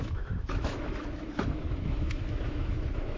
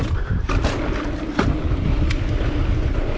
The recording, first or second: second